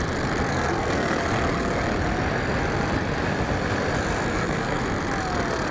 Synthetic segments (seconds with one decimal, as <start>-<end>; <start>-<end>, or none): 0.5-1.2; 4.3-4.8